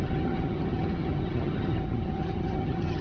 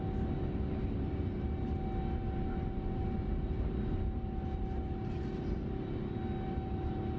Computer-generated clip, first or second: first